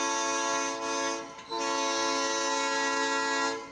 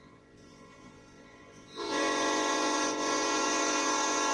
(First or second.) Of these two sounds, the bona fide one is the first